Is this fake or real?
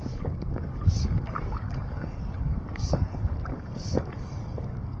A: fake